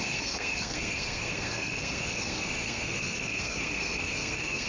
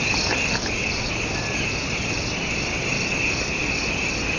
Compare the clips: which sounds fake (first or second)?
first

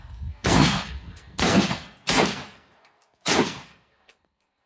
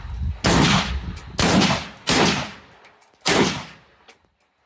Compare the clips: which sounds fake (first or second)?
first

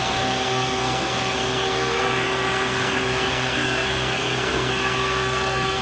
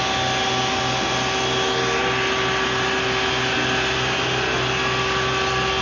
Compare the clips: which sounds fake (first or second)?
first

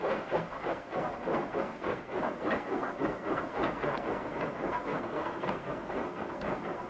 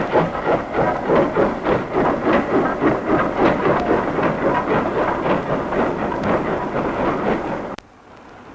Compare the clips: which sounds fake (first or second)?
first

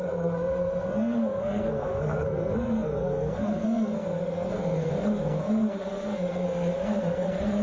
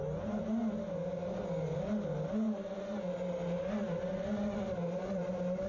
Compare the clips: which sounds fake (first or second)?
first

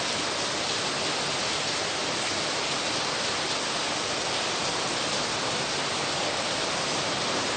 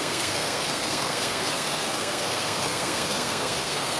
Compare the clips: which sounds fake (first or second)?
second